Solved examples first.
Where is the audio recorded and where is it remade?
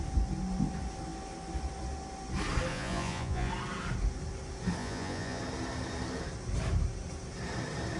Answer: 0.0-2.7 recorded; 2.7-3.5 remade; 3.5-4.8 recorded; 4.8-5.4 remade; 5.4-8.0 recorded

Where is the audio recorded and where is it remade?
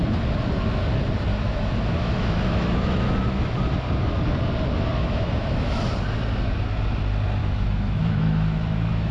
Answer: 0.0-1.3 recorded; 1.3-3.5 remade; 3.5-4.9 recorded; 4.9-5.8 remade; 5.8-7.4 recorded; 7.4-9.1 remade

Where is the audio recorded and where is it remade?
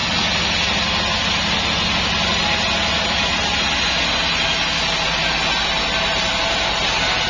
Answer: 0.0-7.3 recorded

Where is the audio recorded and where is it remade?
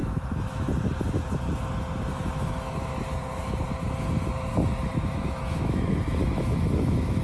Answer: 0.0-0.7 remade; 0.7-2.1 recorded; 2.1-3.0 remade; 3.0-4.9 recorded; 4.9-7.2 remade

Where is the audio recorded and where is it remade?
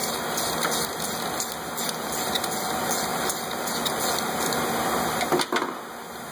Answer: 0.0-6.3 recorded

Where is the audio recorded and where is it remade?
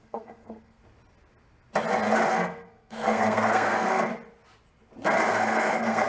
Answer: 0.0-0.8 remade; 0.8-2.3 recorded; 2.3-4.1 remade; 4.1-5.3 recorded; 5.3-6.1 remade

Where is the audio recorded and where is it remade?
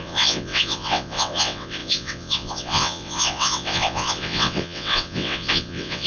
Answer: 0.0-6.1 remade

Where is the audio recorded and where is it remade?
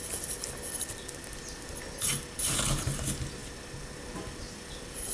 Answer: 0.0-5.1 recorded